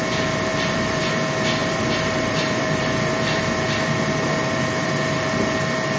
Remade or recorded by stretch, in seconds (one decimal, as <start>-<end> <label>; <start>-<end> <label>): 0.0-0.5 recorded; 0.5-1.1 remade; 1.1-1.6 recorded; 1.6-5.2 remade; 5.2-6.0 recorded

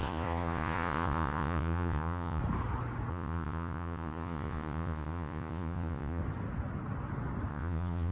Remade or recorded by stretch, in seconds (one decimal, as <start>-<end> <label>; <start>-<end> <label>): 0.0-2.4 remade; 2.4-3.1 recorded; 3.1-6.2 remade; 6.2-7.5 recorded; 7.5-8.1 remade

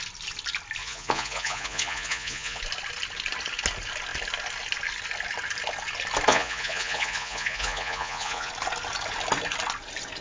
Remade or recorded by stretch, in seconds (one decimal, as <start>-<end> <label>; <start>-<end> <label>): 0.0-0.8 recorded; 0.8-2.6 remade; 2.6-6.3 recorded; 6.3-8.5 remade; 8.5-10.2 recorded

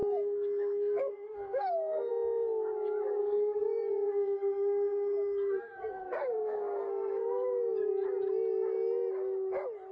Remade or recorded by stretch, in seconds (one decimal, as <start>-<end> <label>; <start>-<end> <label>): 0.0-2.1 remade; 2.1-3.2 recorded; 3.2-7.9 remade; 7.9-9.9 recorded